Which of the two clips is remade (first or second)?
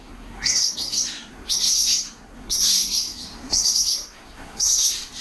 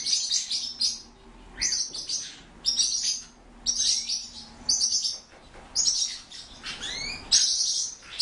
first